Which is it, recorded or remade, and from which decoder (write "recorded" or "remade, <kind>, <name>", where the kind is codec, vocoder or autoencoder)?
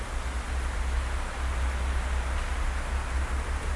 recorded